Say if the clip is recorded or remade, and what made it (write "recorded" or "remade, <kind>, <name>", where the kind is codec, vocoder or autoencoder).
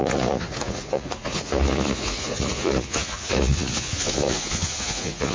remade, vocoder, Vocos